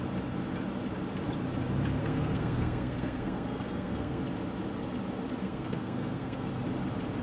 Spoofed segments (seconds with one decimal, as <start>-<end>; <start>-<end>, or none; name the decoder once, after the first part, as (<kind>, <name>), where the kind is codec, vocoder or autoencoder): 2.0-4.2 (codec, SNAC); 5.4-6.5